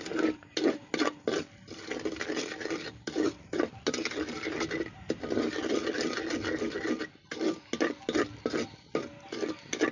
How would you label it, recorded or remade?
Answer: recorded